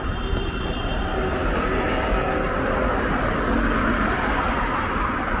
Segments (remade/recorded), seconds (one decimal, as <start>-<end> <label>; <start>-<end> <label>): 0.0-5.4 recorded